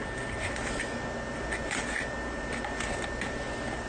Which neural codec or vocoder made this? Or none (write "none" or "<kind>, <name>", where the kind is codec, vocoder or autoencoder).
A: none